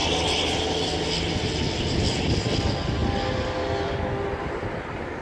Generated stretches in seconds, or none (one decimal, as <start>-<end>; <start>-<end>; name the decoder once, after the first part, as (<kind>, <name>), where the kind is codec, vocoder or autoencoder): 0.0-2.0 (vocoder, BigVGAN v2); 3.0-4.5